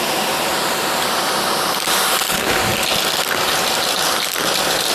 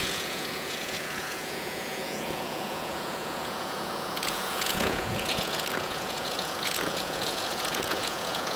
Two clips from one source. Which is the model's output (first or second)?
second